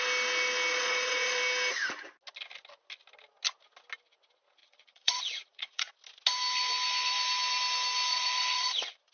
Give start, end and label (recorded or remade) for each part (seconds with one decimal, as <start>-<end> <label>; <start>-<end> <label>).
0.0-0.7 recorded; 0.7-1.4 remade; 1.4-4.6 recorded; 4.6-5.9 remade; 5.9-8.1 recorded; 8.1-9.1 remade